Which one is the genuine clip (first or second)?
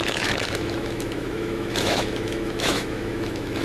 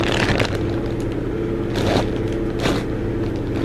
second